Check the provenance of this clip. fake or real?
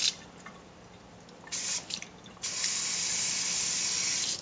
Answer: real